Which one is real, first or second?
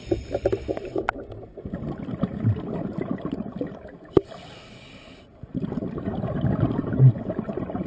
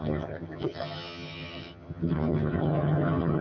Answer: first